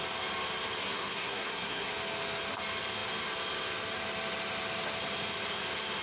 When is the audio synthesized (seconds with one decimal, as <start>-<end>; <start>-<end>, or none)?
0.8-1.9